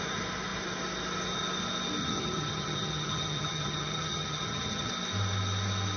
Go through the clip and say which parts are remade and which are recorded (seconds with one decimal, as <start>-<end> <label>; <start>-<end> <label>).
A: 0.0-2.0 recorded; 2.0-4.9 remade; 4.9-6.0 recorded